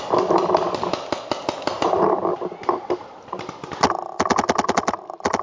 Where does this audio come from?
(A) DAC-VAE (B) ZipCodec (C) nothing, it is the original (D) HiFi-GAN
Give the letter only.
C